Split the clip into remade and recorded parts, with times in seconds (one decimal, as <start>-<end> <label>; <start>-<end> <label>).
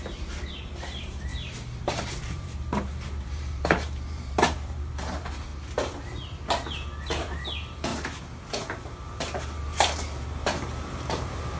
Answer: 0.0-5.5 remade; 5.5-7.1 recorded; 7.1-11.6 remade